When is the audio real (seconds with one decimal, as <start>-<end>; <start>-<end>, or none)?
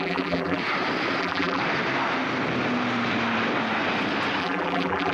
0.6-1.2; 1.6-4.4